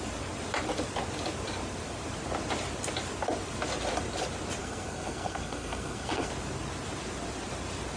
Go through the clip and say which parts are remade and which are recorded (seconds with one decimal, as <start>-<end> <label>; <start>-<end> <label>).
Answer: 0.0-4.6 recorded; 4.6-6.3 remade; 6.3-8.0 recorded